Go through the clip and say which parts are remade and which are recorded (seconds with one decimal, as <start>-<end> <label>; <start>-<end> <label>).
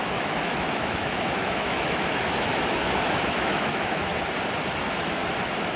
0.0-4.1 remade; 4.1-4.8 recorded; 4.8-5.2 remade; 5.2-5.8 recorded